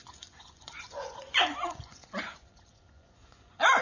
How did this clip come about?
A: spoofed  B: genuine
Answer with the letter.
A